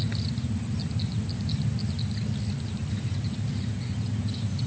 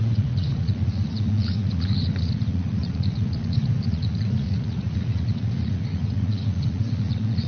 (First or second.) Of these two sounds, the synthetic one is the second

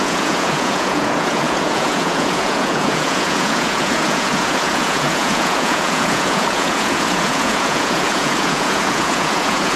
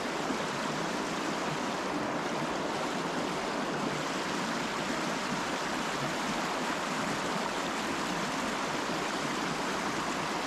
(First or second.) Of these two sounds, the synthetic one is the first